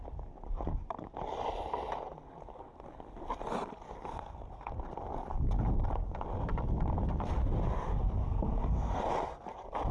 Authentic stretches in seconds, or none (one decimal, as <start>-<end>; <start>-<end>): 0.0-4.1; 4.7-8.2; 9.0-9.9